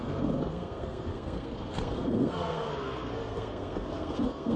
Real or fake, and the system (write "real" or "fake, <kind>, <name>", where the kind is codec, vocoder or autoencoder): fake, codec, SNAC